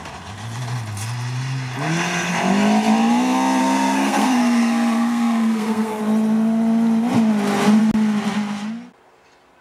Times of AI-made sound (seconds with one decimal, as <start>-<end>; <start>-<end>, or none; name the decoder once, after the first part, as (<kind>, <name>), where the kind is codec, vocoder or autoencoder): 3.6-6.0 (codec, SNAC)